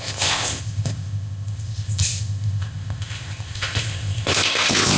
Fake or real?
fake